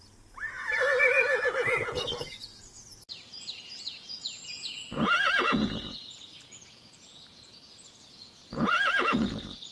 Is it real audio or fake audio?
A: fake